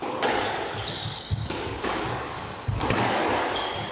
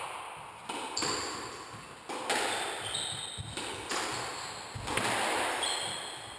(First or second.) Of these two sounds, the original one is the second